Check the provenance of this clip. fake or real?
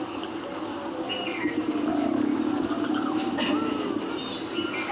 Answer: real